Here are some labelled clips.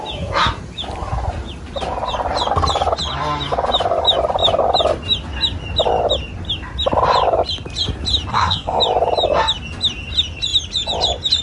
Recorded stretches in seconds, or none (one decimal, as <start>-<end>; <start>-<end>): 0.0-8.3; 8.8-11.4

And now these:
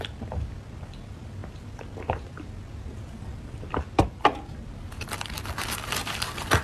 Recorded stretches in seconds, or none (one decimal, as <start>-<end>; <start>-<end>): 0.0-6.6

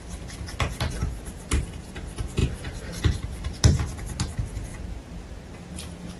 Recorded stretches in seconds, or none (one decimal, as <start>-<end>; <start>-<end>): 0.0-1.0; 1.9-2.4; 3.8-6.2

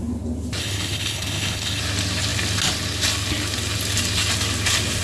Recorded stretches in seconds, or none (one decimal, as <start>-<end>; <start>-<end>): 0.0-0.6; 1.8-5.0